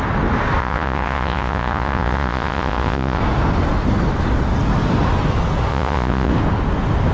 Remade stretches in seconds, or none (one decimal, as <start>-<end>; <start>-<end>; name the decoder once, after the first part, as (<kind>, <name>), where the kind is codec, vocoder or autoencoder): 0.6-3.2 (vocoder, Vocos); 5.7-6.3